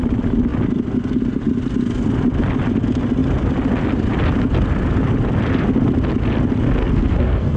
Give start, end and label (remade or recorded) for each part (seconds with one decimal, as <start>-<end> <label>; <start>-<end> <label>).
0.0-6.8 recorded; 6.8-7.6 remade